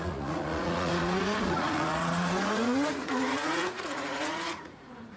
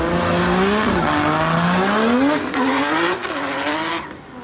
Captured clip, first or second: second